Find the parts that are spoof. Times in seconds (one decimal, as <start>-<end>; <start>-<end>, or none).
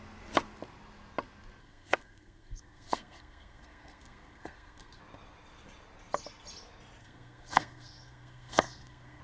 1.6-5.0; 7.0-9.2